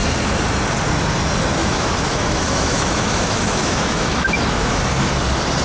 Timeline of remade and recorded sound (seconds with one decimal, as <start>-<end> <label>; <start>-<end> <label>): 0.0-1.6 recorded; 1.6-4.8 remade; 4.8-5.6 recorded